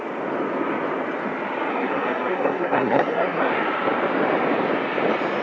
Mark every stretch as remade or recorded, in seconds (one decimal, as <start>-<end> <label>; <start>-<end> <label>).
0.0-1.7 recorded; 1.7-3.5 remade; 3.5-5.4 recorded